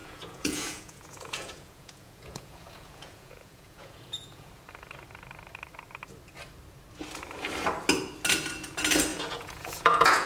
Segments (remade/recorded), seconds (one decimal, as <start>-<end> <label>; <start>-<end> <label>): 0.0-4.5 remade; 4.5-9.1 recorded; 9.1-10.3 remade